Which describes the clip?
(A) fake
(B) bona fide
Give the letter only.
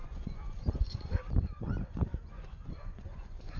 A